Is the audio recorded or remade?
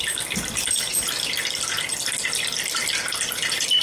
recorded